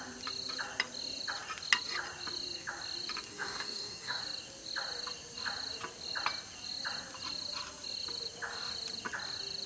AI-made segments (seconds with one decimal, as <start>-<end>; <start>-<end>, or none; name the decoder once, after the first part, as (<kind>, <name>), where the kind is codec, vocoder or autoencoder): 3.3-4.2 (codec, DAC)